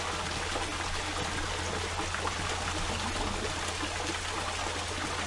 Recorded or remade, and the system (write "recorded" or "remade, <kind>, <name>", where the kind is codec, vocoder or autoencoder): recorded